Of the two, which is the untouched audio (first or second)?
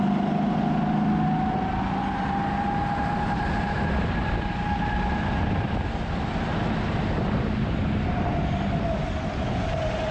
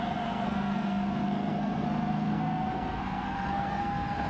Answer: first